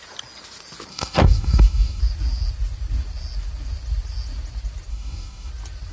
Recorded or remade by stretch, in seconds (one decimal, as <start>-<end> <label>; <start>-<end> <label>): 0.0-0.9 recorded; 0.9-2.0 remade; 2.0-4.9 recorded; 4.9-5.5 remade; 5.5-5.9 recorded